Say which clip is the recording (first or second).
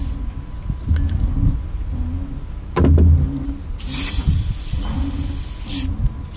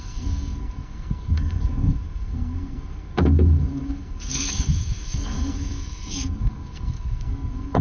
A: first